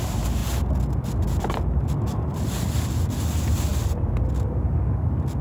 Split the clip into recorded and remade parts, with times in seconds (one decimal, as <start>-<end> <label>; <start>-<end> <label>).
0.0-5.4 recorded